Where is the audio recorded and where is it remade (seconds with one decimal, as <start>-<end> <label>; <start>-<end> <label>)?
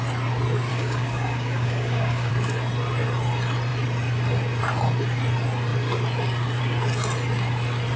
0.0-0.7 recorded; 0.7-2.3 remade; 2.3-8.0 recorded